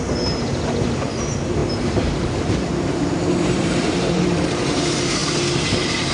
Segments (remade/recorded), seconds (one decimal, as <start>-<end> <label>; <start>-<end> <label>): 0.0-6.1 remade